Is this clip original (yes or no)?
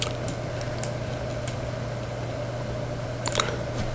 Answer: yes